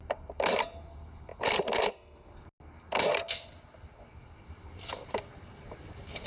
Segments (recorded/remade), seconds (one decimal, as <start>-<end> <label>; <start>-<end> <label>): 0.0-6.3 recorded